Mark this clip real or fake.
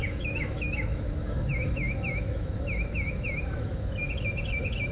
fake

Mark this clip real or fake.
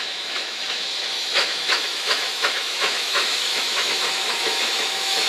fake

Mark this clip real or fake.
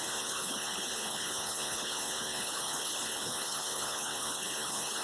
fake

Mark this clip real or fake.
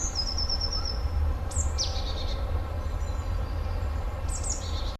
real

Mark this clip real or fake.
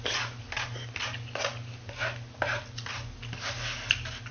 real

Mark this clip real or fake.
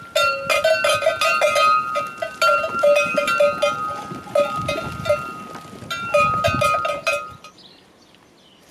real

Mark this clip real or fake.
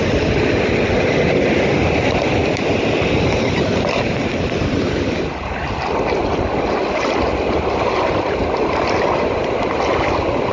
real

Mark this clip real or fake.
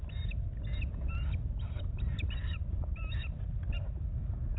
real